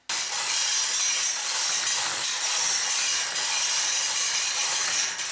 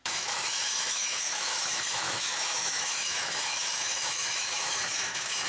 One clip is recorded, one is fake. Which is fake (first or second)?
second